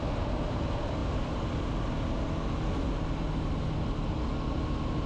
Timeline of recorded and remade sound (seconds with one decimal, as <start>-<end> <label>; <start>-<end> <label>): 0.0-5.1 recorded